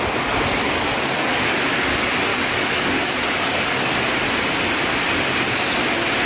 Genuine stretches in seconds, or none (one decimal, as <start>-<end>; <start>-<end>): 0.0-0.6; 1.3-2.3; 3.9-6.3